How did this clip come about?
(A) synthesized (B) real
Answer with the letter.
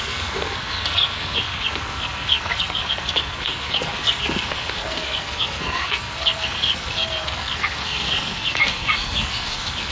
A